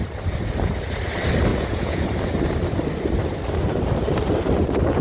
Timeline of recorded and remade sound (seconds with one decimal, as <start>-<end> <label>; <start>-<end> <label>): 0.0-1.5 recorded; 1.5-2.1 remade; 2.1-5.0 recorded